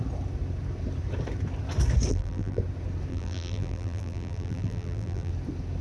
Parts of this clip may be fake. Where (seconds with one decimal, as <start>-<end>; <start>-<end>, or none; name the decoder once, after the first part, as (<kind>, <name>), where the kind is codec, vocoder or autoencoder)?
2.1-2.6 (vocoder, BigVGAN v2); 3.1-5.3